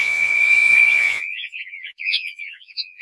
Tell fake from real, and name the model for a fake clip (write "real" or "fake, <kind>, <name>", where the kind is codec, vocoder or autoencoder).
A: fake, vocoder, Vocos